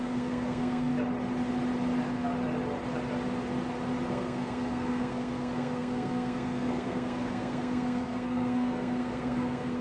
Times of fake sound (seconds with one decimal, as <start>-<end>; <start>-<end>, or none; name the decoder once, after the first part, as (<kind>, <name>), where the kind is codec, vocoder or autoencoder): 0.0-0.9 (codec, SNAC); 4.1-9.8